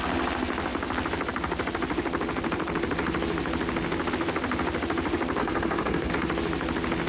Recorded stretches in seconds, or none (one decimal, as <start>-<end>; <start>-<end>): 0.0-5.4; 6.1-7.1